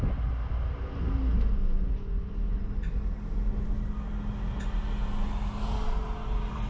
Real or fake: real